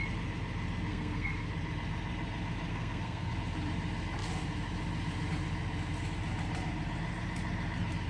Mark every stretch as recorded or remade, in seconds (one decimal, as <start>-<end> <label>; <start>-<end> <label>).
0.0-0.9 recorded; 0.9-1.5 remade; 1.5-2.7 recorded; 2.7-3.3 remade; 3.3-8.1 recorded